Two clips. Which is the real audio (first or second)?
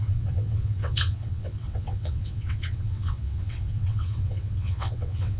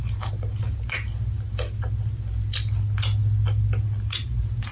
second